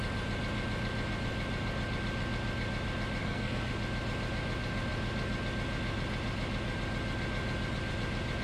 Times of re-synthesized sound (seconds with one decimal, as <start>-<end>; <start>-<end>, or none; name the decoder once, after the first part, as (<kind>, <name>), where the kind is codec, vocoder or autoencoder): 3.2-3.7 (codec, SNAC)